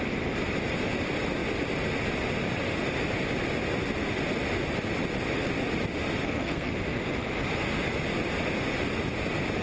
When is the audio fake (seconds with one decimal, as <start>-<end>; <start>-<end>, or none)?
6.2-6.7